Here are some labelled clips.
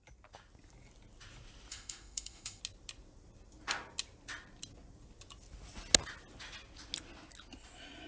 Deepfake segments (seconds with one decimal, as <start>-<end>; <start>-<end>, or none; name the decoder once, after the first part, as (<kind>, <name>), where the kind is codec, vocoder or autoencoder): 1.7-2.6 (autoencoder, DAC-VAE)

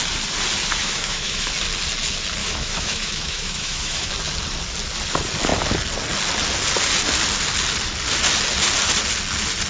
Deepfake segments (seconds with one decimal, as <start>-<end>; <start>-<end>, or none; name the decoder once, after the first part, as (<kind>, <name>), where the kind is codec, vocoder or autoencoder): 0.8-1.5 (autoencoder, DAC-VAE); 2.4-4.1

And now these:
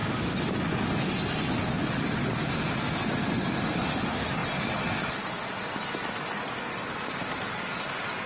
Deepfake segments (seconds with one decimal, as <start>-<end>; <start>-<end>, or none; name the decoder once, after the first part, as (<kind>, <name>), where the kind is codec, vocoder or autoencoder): none